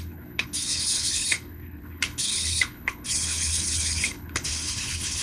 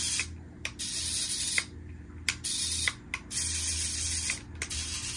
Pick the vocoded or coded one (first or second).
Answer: first